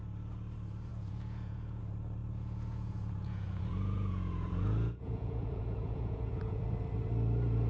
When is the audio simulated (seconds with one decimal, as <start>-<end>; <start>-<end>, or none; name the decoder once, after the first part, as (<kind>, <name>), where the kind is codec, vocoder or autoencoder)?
0.9-1.8 (vocoder, Vocos); 2.2-6.6